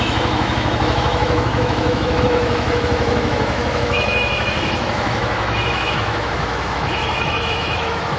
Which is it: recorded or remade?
remade